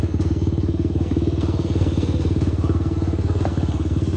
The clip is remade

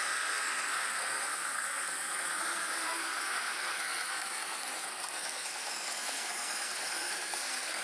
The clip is remade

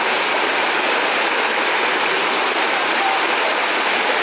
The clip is recorded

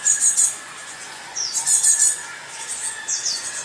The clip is remade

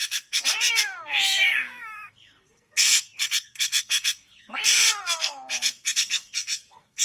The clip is remade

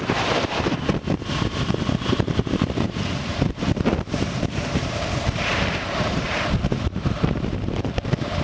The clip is remade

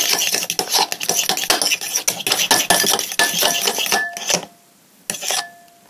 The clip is recorded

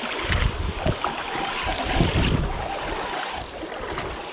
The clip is recorded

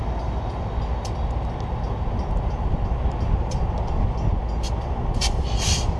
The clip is recorded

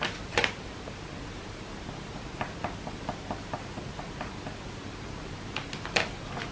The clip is recorded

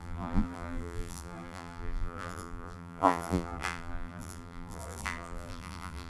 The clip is remade